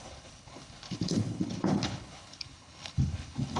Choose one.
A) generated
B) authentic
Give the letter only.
A